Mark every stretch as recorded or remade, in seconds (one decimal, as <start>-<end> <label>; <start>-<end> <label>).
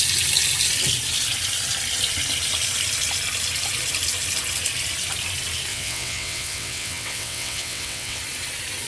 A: 0.0-5.7 recorded; 5.7-8.2 remade; 8.2-8.9 recorded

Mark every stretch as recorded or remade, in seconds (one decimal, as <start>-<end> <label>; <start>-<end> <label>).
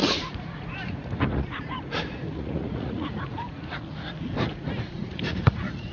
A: 0.0-3.5 remade; 3.5-4.5 recorded; 4.5-5.9 remade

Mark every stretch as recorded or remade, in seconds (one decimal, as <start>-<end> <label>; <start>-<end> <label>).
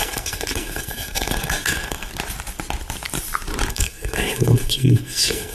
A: 0.0-2.1 remade; 2.1-3.7 recorded; 3.7-5.5 remade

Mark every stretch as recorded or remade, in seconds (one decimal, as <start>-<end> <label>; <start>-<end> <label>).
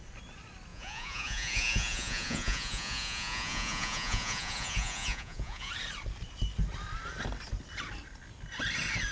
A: 0.0-0.7 recorded; 0.7-5.7 remade; 5.7-9.1 recorded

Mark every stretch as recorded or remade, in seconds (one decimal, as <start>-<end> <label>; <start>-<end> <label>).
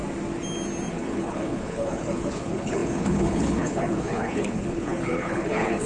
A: 0.0-0.9 recorded; 0.9-5.9 remade